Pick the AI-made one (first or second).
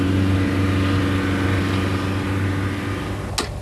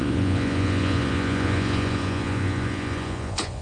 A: second